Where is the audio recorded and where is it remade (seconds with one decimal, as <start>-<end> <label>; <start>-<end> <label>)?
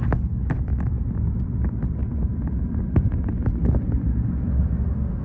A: 0.0-5.2 recorded